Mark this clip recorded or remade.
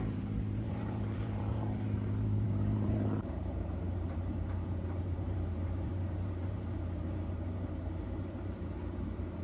remade